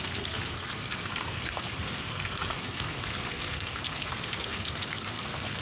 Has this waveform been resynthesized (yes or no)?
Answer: yes